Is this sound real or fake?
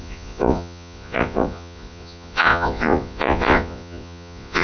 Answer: fake